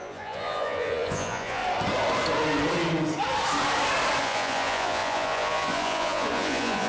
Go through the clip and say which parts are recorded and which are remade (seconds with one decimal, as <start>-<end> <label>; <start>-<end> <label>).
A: 0.0-1.6 remade; 1.6-4.2 recorded; 4.2-6.9 remade